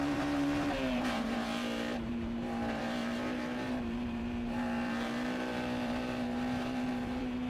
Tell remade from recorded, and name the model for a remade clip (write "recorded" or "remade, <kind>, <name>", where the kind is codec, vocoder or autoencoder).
remade, vocoder, BigVGAN v2